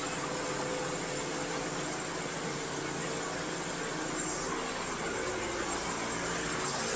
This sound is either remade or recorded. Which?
recorded